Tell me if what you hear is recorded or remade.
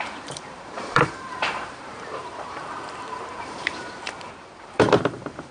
remade